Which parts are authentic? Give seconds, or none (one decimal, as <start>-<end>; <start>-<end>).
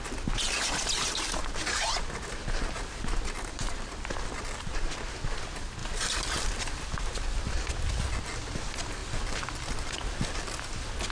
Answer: 0.0-11.1